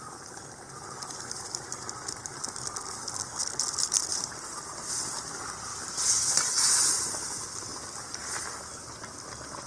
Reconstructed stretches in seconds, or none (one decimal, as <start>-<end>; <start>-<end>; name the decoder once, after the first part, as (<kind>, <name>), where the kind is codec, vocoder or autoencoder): 4.1-4.9 (vocoder, BigVGAN v2); 5.7-7.1